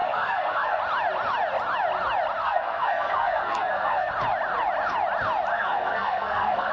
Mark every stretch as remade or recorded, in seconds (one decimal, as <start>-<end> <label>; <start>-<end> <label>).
0.0-0.8 remade; 0.8-2.4 recorded; 2.4-4.1 remade; 4.1-5.5 recorded; 5.5-6.7 remade